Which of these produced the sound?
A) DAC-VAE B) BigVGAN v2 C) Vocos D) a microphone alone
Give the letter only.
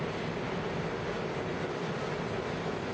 D